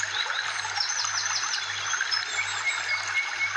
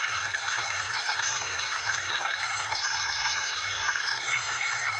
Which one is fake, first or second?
second